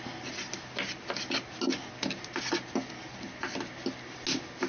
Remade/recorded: recorded